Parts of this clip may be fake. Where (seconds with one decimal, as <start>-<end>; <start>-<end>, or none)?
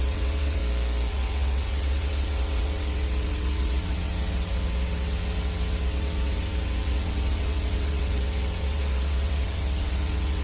0.0-0.6; 1.1-10.4